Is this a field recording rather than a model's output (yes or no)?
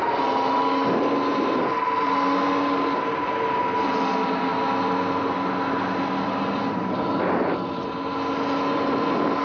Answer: yes